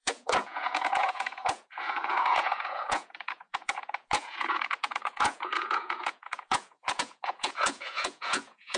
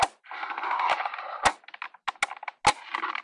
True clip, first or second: second